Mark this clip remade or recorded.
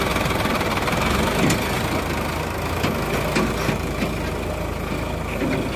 recorded